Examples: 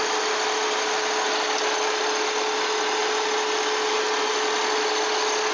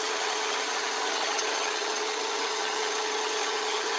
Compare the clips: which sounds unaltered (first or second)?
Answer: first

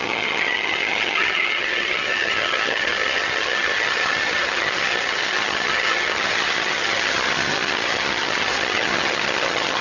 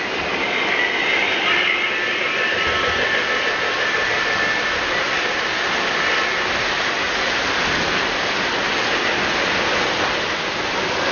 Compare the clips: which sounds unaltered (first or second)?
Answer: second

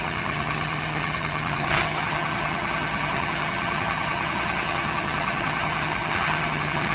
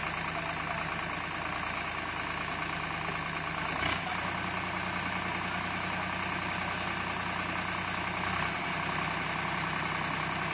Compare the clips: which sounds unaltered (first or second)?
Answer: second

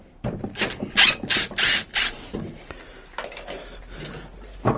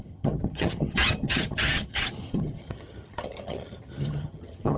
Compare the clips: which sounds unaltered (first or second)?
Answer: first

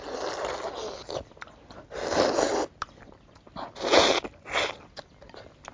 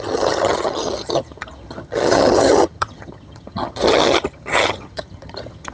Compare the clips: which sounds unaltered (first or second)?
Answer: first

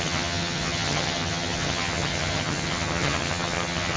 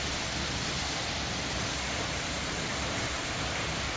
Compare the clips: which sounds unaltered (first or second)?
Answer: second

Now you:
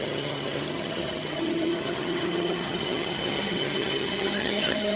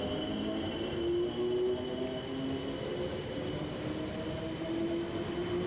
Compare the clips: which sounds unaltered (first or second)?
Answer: second